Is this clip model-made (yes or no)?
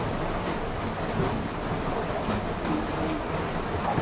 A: no